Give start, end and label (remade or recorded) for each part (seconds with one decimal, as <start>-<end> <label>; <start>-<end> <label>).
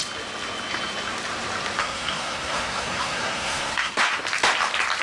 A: 0.0-1.8 recorded; 1.8-4.1 remade; 4.1-5.0 recorded